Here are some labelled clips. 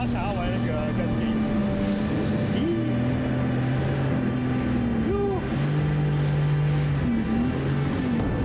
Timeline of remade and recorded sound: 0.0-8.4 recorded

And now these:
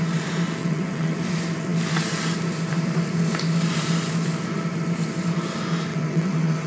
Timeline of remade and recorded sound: 0.0-0.6 recorded; 0.6-1.2 remade; 1.2-5.9 recorded; 5.9-6.7 remade

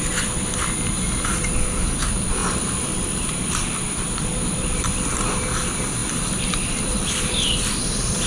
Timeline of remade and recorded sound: 0.0-2.4 recorded; 2.4-5.1 remade; 5.1-6.0 recorded; 6.0-7.1 remade; 7.1-8.3 recorded

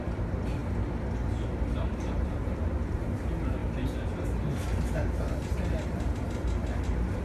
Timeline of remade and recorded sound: 0.0-0.6 remade; 0.6-1.6 recorded; 1.6-3.6 remade; 3.6-5.3 recorded; 5.3-7.2 remade

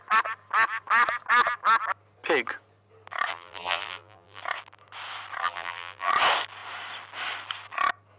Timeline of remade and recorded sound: 0.0-3.3 recorded; 3.3-4.4 remade; 4.4-5.4 recorded; 5.4-6.1 remade; 6.1-8.2 recorded

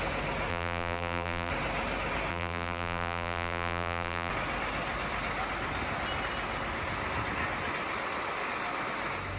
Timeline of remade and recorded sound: 0.0-0.5 recorded; 0.5-1.5 remade; 1.5-2.3 recorded; 2.3-4.3 remade; 4.3-9.4 recorded

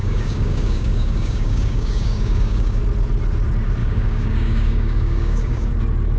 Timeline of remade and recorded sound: 0.0-2.8 remade; 2.8-3.8 recorded; 3.8-5.7 remade; 5.7-6.2 recorded

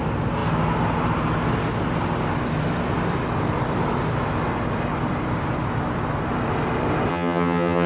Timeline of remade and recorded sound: 0.0-7.1 recorded; 7.1-7.9 remade